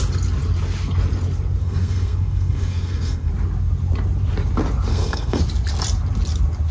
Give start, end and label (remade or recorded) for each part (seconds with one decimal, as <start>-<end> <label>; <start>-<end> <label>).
0.0-1.6 recorded; 1.6-3.3 remade; 3.3-4.9 recorded; 4.9-5.4 remade; 5.4-6.7 recorded